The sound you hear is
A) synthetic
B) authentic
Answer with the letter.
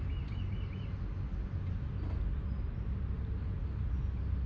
B